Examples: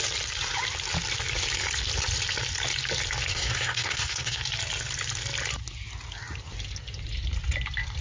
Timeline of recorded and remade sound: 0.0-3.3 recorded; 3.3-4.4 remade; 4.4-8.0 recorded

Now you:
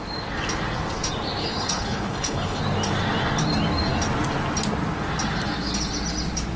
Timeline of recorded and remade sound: 0.0-1.4 recorded; 1.4-2.6 remade; 2.6-6.6 recorded